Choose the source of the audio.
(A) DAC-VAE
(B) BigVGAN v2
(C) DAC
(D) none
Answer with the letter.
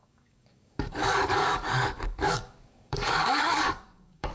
C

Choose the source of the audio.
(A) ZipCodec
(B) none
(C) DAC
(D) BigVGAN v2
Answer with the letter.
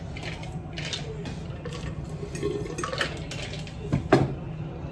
B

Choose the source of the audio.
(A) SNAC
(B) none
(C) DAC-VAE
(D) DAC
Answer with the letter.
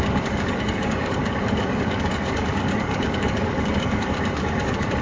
D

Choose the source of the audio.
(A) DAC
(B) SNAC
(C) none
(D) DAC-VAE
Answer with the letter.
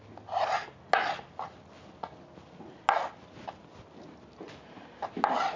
C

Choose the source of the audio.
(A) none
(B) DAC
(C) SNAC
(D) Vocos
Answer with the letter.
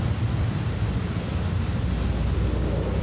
A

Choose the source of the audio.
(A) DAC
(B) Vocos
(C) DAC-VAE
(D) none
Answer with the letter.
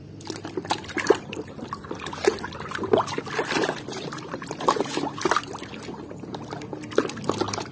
D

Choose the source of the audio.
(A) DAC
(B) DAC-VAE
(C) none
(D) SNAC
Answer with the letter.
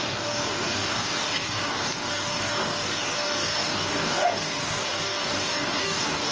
A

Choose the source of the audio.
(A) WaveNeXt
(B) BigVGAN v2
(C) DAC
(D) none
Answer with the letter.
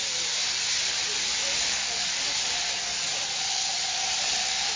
D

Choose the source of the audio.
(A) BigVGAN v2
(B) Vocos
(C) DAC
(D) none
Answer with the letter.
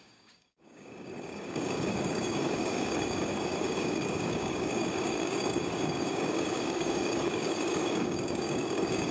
C